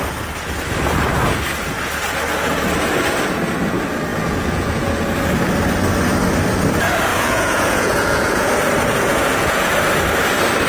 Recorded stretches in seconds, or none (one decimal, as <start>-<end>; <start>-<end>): 0.0-4.1; 4.9-7.1; 8.5-9.1; 9.7-10.7